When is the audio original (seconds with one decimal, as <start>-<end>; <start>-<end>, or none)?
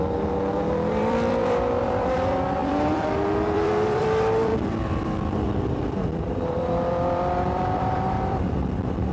4.5-5.2